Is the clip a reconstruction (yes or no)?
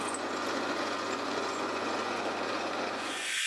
yes